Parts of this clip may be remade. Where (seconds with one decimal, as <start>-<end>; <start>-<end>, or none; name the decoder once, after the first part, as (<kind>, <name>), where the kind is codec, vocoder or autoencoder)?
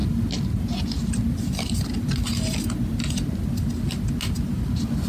none